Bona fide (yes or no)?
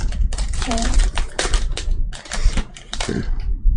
no